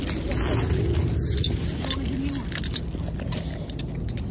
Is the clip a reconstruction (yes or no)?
no